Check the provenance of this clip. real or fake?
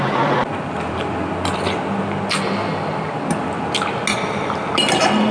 real